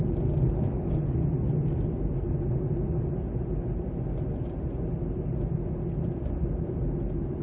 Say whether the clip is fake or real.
real